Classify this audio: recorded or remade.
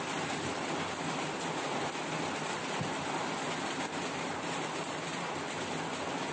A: recorded